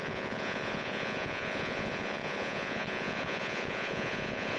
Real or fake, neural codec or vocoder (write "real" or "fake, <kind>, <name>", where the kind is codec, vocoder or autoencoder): fake, vocoder, Vocos